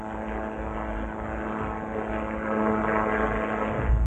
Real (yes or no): yes